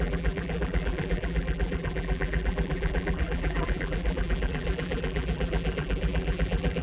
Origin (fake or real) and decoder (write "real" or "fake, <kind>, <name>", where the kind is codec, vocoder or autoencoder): fake, vocoder, BigVGAN v2